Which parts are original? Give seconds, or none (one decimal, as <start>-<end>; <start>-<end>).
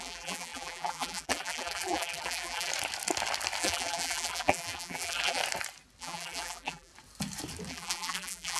2.7-3.6; 5.4-6.0; 6.9-7.7